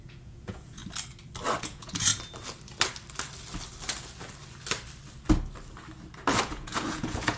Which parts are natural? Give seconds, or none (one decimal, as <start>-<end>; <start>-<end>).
0.8-1.6; 2.1-6.4